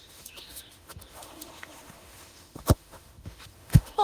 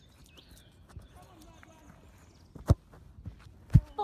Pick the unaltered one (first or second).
second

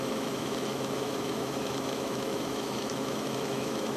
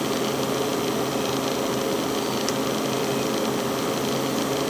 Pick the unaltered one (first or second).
second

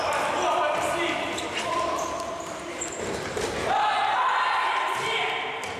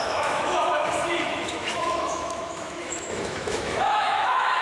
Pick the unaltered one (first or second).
first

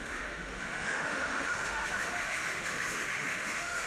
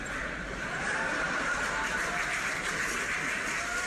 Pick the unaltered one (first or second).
second